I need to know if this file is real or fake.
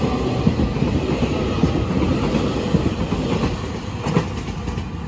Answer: real